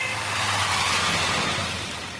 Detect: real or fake real